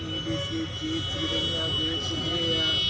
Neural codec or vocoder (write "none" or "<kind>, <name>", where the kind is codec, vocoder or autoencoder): none